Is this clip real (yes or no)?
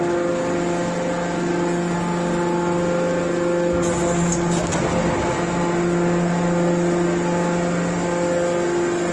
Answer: yes